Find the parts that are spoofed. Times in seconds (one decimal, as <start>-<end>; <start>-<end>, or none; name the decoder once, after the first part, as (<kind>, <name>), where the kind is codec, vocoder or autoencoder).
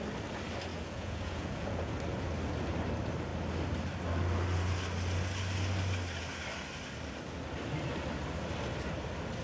0.7-1.9 (vocoder, Vocos)